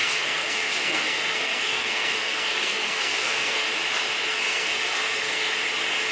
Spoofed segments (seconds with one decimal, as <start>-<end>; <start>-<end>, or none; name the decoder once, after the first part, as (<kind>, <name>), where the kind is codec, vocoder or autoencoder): 0.0-3.7 (codec, SNAC); 4.3-5.5